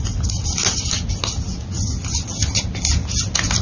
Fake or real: real